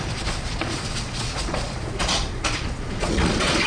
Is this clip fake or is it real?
fake